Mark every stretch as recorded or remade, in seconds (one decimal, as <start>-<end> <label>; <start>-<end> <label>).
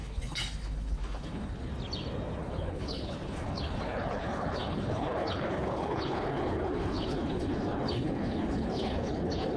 0.0-1.7 remade; 1.7-2.4 recorded; 2.4-9.6 remade